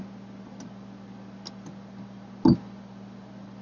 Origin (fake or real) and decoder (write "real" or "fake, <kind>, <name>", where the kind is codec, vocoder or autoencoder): real